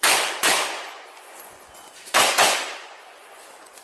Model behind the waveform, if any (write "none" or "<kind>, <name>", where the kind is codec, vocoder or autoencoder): vocoder, Vocos